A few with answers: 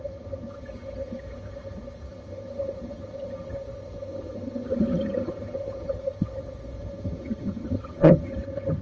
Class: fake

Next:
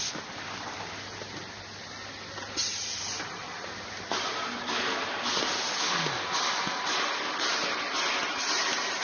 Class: real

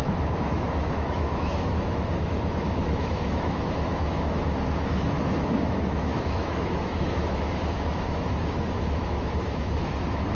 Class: fake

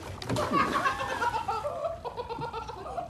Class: real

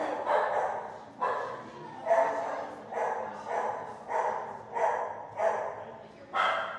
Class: real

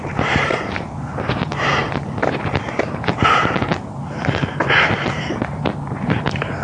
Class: fake